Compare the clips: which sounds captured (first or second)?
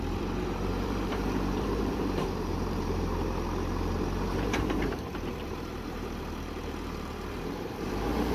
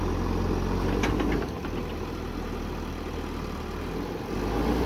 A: second